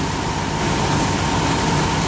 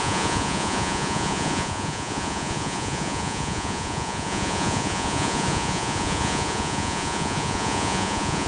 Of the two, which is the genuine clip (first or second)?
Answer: first